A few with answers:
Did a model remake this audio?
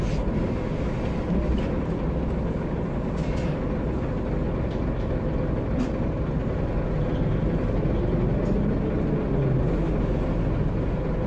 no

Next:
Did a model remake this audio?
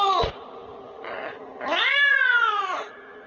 yes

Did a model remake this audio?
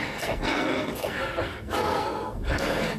yes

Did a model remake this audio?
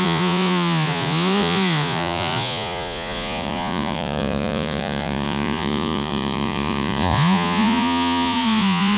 yes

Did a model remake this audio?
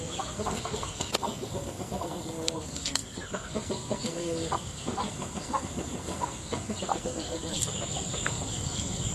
yes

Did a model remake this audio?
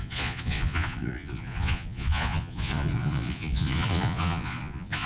yes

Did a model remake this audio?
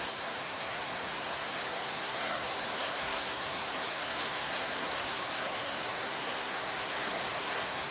yes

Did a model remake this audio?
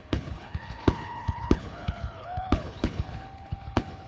yes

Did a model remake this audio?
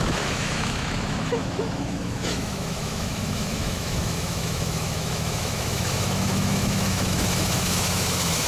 yes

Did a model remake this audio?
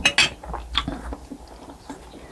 no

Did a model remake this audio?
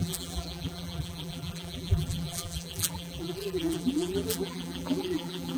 yes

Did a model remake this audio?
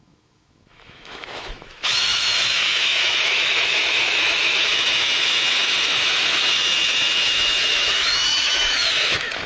yes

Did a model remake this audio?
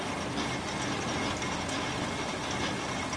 no